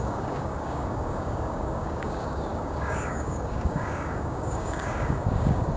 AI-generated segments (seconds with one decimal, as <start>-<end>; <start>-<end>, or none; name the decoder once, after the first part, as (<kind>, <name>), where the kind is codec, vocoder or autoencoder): 0.0-5.8 (codec, DAC)